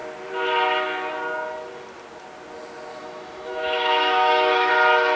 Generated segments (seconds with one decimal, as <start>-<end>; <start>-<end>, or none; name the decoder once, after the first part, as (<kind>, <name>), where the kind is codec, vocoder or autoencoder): 2.9-4.7 (autoencoder, DAC-VAE)

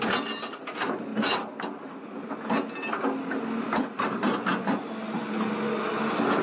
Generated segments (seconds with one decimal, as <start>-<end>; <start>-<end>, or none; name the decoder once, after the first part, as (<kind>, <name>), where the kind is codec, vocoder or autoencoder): none